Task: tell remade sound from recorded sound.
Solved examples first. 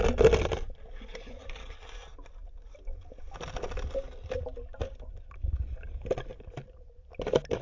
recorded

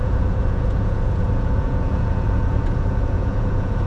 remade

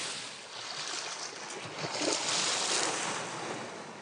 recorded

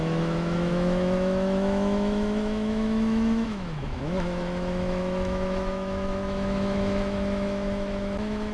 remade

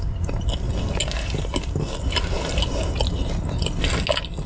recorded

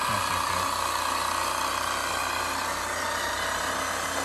recorded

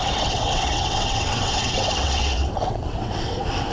remade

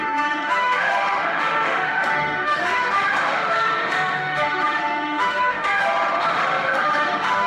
remade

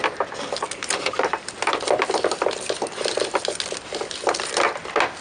recorded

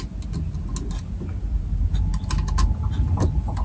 recorded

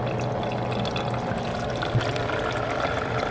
recorded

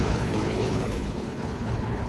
remade